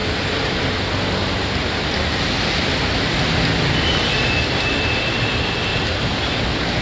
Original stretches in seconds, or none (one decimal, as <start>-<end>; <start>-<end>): 0.6-6.8